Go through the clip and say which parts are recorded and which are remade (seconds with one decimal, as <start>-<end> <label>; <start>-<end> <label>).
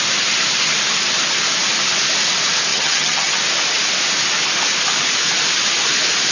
0.0-2.7 recorded; 2.7-3.4 remade; 3.4-6.3 recorded